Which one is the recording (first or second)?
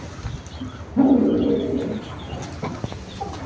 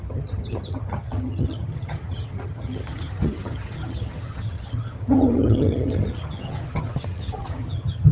first